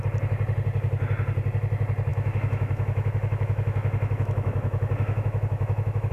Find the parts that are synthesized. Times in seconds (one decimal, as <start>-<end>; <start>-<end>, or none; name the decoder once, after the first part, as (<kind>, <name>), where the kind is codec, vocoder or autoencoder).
2.1-6.1 (autoencoder, DAC-VAE)